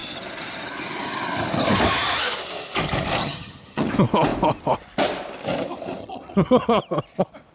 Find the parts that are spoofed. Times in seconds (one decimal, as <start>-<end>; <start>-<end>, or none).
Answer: 3.2-3.9; 6.0-6.8